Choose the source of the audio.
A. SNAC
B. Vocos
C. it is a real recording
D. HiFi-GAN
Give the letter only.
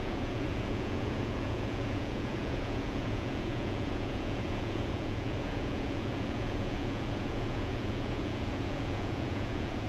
B